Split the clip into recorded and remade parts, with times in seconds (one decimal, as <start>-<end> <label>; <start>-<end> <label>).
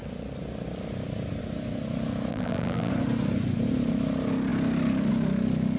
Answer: 0.0-2.3 recorded; 2.3-2.9 remade; 2.9-5.8 recorded